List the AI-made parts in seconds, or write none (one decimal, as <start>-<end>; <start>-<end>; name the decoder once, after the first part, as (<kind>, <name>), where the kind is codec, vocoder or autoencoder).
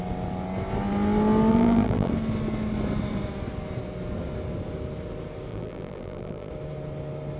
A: 1.5-2.1 (vocoder, BigVGAN v2); 5.5-6.5